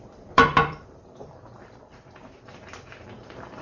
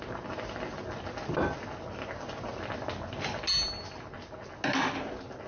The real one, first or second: second